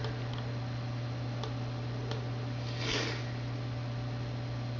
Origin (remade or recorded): recorded